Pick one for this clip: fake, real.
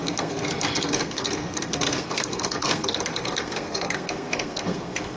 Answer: fake